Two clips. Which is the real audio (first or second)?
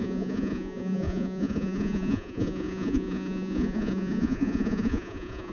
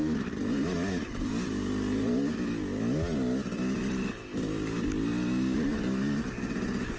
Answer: second